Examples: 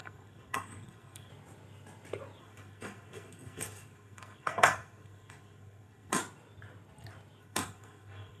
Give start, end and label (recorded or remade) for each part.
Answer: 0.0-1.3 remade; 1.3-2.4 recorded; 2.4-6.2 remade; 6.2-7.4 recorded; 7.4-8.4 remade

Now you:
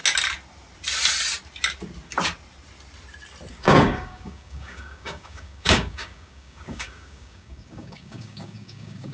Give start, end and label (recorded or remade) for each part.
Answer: 0.0-3.5 recorded; 3.5-9.1 remade

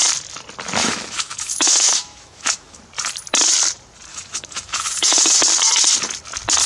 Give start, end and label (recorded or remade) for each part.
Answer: 0.0-0.8 recorded; 0.8-2.8 remade; 2.8-4.1 recorded; 4.1-5.4 remade; 5.4-6.7 recorded